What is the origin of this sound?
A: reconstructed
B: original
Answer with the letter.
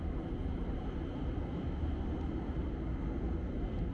B